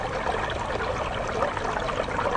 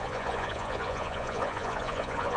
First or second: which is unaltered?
first